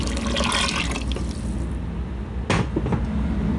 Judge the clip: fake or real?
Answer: real